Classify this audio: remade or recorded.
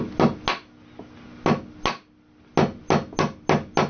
recorded